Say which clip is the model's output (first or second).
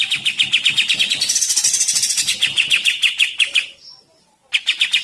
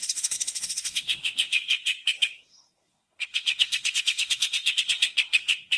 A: second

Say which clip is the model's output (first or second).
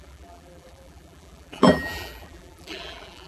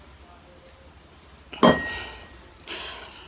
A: first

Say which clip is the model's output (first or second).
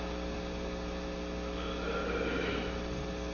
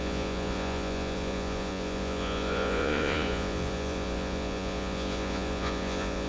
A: second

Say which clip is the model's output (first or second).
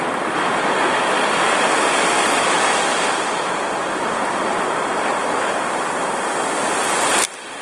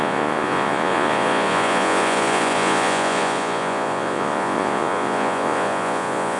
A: second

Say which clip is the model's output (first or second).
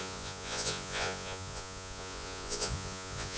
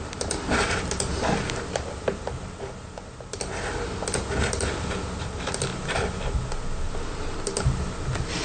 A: first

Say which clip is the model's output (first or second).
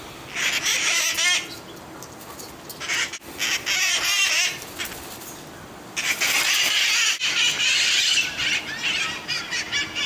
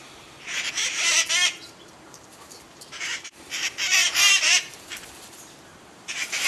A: second